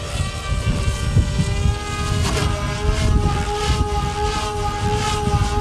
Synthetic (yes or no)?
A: no